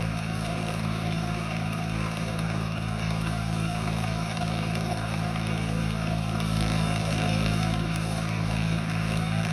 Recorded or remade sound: remade